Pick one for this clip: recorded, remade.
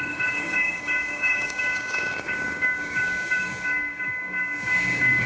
remade